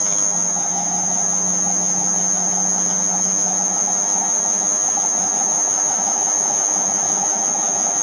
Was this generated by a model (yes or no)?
yes